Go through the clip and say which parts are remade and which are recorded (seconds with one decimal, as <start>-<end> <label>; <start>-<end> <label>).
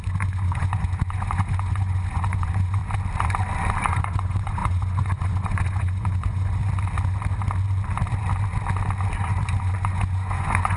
0.0-2.8 remade; 2.8-3.8 recorded; 3.8-6.6 remade; 6.6-9.6 recorded; 9.6-10.8 remade